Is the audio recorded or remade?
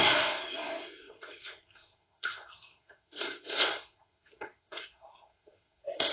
remade